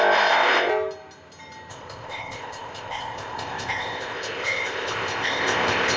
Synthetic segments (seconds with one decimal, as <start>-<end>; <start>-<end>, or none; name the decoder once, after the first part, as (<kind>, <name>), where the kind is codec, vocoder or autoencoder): 0.0-0.7 (codec, ZipCodec); 1.7-6.0